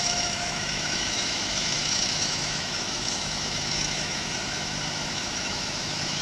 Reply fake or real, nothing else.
fake